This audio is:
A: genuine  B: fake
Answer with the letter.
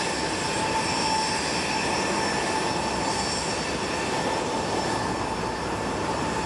A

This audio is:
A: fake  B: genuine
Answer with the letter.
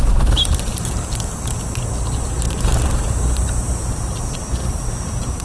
A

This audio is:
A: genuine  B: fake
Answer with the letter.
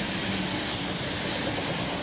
A